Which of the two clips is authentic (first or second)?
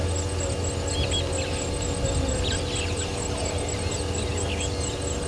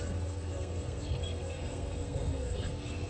first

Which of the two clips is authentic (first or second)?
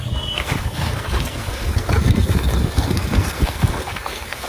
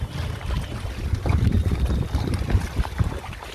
second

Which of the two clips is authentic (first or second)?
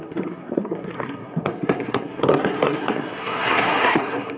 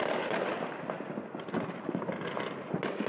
second